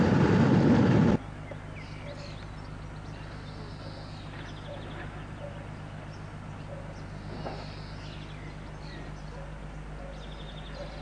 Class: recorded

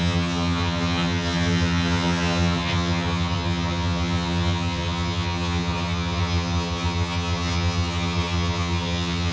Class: remade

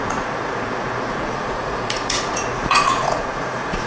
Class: remade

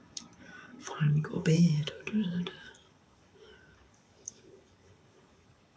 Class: remade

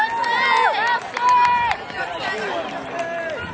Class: recorded